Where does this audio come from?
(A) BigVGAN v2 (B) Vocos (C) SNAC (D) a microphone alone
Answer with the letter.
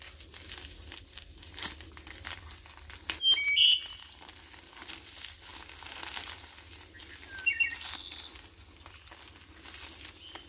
D